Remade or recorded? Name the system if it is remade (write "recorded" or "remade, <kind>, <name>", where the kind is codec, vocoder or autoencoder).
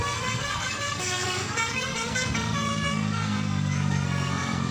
remade, codec, SNAC